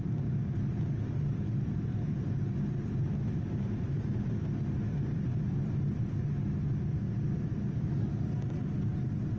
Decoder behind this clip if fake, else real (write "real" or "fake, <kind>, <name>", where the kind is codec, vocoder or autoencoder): real